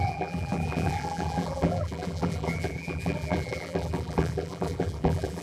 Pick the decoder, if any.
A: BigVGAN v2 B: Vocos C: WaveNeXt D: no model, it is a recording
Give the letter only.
A